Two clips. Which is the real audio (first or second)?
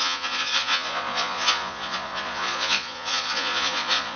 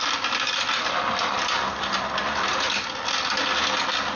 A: second